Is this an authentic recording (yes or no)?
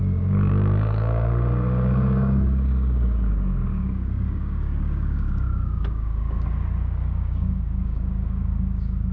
no